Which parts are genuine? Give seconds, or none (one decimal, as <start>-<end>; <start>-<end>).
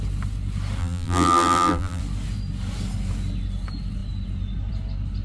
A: 0.0-0.8; 2.0-5.2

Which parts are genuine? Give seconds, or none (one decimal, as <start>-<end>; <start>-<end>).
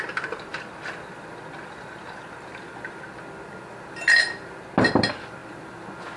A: 0.0-6.2